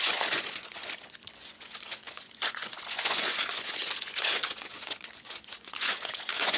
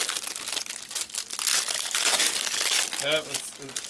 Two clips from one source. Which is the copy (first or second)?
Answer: first